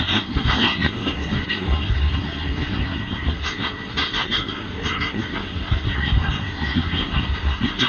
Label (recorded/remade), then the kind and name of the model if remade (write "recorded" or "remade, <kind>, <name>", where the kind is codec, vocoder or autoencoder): remade, codec, SNAC